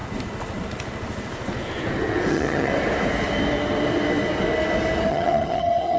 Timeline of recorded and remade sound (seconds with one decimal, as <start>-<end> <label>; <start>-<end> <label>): 0.0-2.3 recorded; 2.3-2.7 remade; 2.7-5.1 recorded; 5.1-6.0 remade